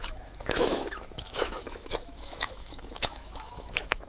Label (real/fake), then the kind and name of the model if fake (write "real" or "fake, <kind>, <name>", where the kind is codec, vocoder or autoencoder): fake, autoencoder, DAC-VAE